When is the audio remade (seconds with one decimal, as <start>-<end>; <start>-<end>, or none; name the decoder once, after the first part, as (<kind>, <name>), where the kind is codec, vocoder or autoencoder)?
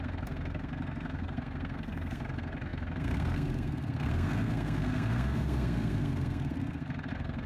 0.0-7.5 (codec, SNAC)